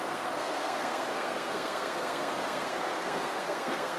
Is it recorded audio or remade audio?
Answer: remade